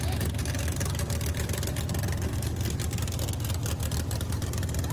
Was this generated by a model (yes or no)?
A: no